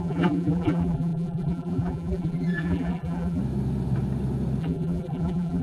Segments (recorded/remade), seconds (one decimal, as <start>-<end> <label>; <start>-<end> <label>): 0.0-3.4 remade; 3.4-4.6 recorded; 4.6-5.6 remade